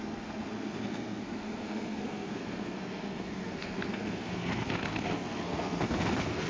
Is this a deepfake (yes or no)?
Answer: yes